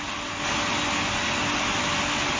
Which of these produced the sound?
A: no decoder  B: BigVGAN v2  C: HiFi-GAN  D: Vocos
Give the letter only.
A